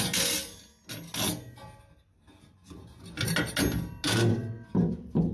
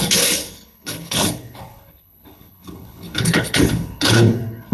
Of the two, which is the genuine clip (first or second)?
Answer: first